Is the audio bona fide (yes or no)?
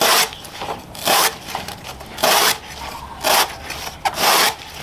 yes